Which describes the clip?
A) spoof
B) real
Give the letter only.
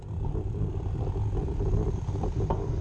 A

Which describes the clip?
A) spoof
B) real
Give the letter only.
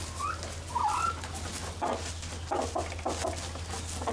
B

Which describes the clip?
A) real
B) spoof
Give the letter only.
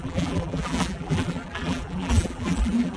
B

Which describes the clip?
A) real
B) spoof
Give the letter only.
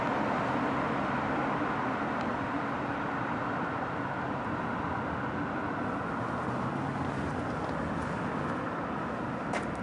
B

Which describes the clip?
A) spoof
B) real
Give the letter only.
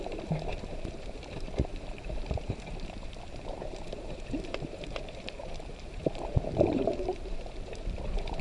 A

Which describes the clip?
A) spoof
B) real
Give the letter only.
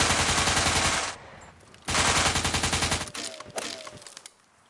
B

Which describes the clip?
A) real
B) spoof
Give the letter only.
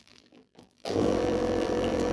B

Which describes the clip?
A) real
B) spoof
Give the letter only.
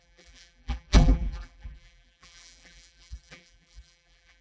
B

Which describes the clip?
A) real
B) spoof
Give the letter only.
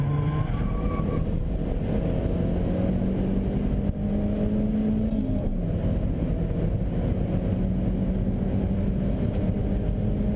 A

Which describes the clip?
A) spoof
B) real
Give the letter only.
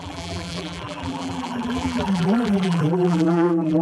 A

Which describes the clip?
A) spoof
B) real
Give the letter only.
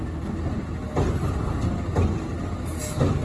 B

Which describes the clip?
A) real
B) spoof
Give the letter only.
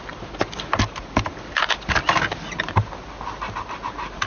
A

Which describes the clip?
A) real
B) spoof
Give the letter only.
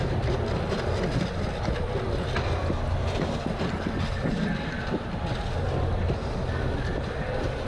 A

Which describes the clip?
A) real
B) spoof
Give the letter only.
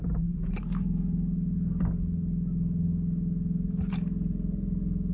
A